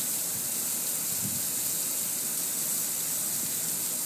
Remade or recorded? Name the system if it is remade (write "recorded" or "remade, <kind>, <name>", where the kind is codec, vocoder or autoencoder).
recorded